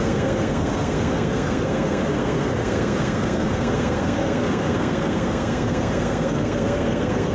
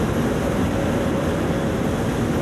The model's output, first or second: first